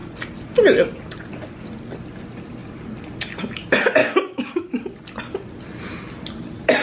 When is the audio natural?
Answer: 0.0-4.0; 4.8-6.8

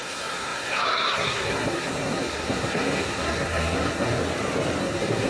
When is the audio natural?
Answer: 4.2-4.8

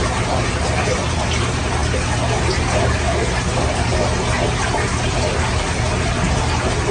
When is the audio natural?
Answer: 0.0-6.9

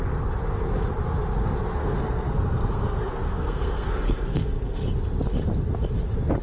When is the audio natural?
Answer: 0.0-1.8; 4.8-6.4

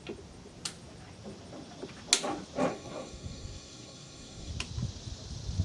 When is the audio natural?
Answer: 0.0-2.7; 4.5-5.6

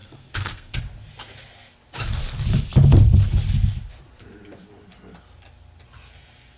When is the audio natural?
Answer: 0.8-6.6